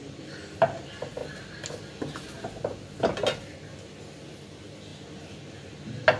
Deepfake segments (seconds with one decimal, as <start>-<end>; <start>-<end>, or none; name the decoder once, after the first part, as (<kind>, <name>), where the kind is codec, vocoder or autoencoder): none